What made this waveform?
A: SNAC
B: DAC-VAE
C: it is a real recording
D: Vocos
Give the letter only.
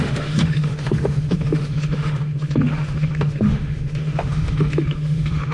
B